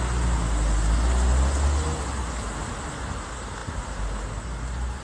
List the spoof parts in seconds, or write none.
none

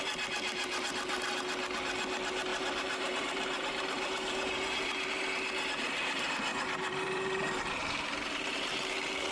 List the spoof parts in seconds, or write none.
2.5-5.1; 6.5-8.9

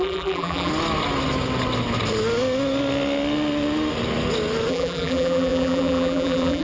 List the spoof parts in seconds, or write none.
0.0-0.7; 4.7-6.6

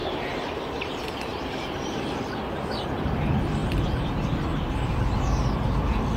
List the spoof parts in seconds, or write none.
1.3-2.9